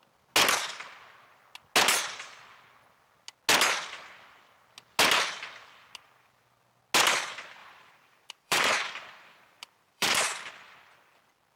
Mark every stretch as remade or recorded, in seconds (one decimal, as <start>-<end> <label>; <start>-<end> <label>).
0.0-7.6 recorded; 7.6-10.5 remade; 10.5-11.6 recorded